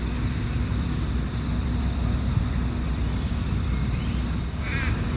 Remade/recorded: remade